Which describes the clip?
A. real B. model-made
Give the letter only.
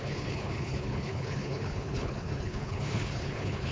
B